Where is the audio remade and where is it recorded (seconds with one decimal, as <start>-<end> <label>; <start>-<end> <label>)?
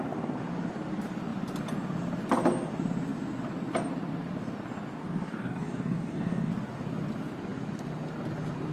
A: 0.0-5.0 recorded; 5.0-6.5 remade; 6.5-8.7 recorded